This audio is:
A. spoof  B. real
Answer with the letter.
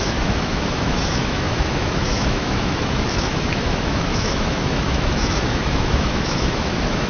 A